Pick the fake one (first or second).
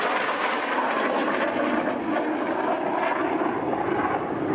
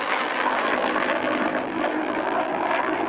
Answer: second